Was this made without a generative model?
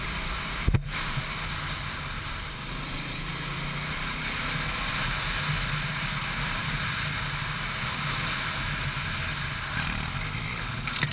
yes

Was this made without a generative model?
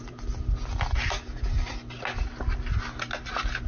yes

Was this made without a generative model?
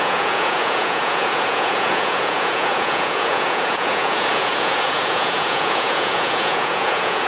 no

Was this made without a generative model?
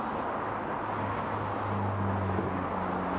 yes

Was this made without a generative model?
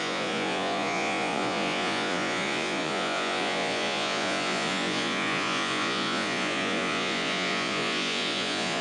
no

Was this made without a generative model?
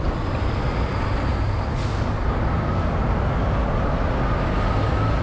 yes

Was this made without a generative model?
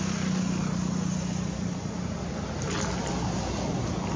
yes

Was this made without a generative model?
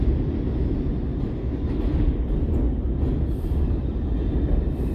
yes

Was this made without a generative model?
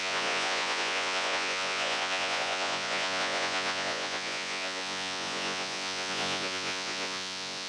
no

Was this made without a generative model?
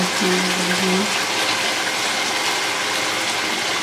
yes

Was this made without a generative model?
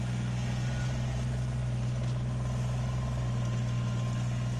yes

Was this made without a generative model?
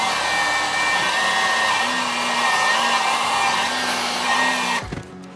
yes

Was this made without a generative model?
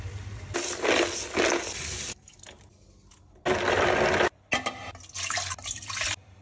yes